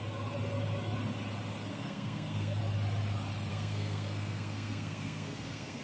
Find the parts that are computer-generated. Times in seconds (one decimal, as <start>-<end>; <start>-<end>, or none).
1.7-2.6; 3.5-5.8